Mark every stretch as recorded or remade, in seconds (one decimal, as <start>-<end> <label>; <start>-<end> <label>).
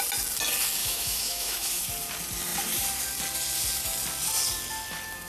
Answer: 0.0-0.8 recorded; 0.8-1.8 remade; 1.8-5.3 recorded